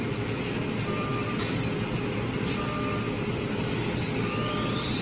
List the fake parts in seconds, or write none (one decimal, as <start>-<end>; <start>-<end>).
none